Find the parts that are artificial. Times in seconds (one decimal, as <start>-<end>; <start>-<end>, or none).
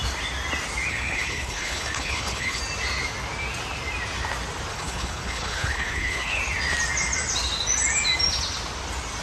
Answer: 0.9-2.6; 4.7-6.4